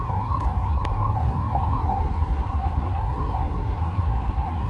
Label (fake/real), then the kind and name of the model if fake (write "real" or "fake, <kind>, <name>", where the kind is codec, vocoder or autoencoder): fake, codec, SNAC